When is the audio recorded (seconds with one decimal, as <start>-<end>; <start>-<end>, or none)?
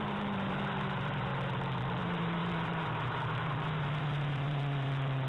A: 1.3-2.0